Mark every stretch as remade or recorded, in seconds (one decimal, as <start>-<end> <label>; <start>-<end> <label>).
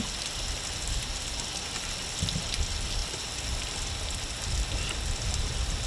0.0-5.9 recorded